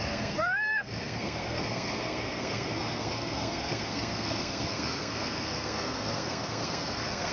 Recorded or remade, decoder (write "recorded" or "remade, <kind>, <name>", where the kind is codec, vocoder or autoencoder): remade, codec, SNAC